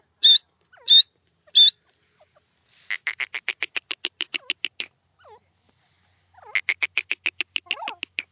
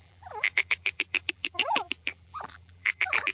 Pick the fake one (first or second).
second